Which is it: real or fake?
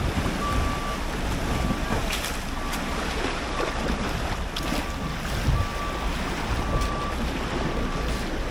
real